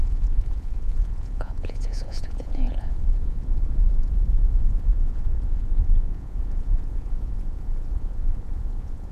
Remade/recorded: remade